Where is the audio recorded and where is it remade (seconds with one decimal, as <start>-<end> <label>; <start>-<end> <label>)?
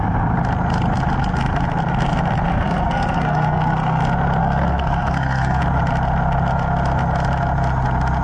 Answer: 0.0-2.5 recorded; 2.5-4.0 remade; 4.0-4.4 recorded; 4.4-5.6 remade; 5.6-8.2 recorded